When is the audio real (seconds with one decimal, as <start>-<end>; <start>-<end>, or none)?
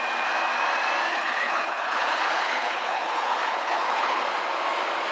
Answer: 0.0-1.1; 4.2-5.1